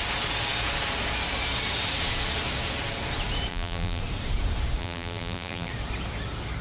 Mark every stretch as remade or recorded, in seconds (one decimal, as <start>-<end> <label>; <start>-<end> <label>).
0.0-3.5 recorded; 3.5-4.0 remade; 4.0-4.8 recorded; 4.8-5.7 remade; 5.7-6.6 recorded